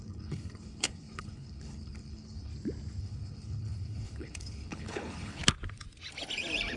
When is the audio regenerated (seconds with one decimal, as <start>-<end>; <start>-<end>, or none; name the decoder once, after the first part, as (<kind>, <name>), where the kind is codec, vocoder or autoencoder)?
0.0-2.5 (codec, HILCodec); 3.0-5.4